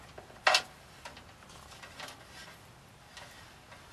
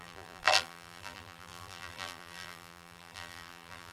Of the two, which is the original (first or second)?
first